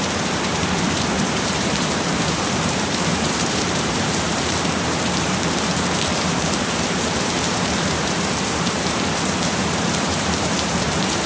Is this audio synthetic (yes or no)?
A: yes